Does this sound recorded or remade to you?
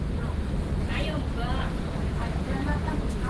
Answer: recorded